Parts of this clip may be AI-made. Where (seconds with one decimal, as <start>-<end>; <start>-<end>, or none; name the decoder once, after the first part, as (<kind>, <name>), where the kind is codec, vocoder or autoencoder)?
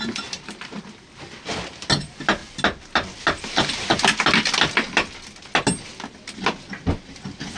none